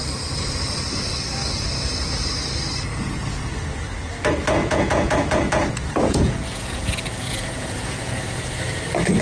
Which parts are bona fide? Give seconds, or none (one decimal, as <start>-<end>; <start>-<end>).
0.0-4.6; 8.2-9.2